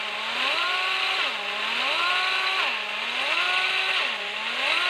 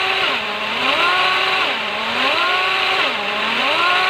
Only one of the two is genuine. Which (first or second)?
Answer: first